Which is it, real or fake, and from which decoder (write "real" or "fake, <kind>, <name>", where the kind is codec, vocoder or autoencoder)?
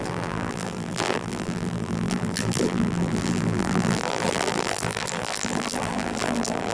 fake, vocoder, BigVGAN v2